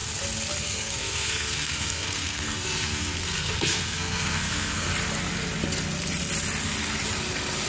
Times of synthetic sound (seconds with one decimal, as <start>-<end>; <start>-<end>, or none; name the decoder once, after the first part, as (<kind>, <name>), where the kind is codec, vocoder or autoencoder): 0.6-4.9 (codec, SNAC)

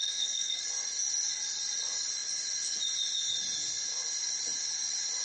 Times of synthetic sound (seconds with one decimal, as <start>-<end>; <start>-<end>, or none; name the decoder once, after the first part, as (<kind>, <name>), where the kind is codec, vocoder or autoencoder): 0.0-0.6 (codec, SNAC)

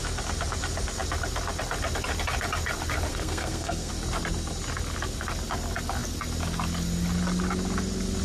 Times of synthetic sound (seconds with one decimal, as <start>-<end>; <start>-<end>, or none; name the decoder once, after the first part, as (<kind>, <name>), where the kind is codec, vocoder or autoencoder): 3.1-3.9 (codec, SNAC)

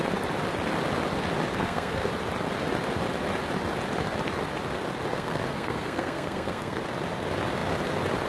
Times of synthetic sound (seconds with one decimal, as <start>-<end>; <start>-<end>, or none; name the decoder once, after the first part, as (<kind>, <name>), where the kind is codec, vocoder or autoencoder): 1.5-2.1 (codec, SNAC); 5.1-6.8

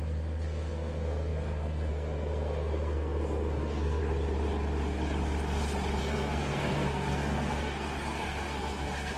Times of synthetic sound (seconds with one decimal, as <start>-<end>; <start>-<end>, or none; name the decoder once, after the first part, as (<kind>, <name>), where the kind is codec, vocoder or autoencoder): 0.0-4.0 (codec, SNAC); 6.0-9.2